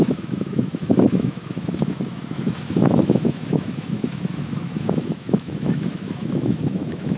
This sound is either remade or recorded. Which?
remade